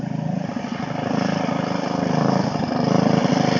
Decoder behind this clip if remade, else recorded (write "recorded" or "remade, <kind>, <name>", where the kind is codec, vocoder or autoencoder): recorded